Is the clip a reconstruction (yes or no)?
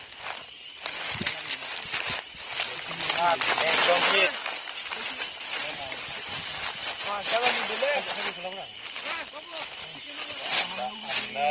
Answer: no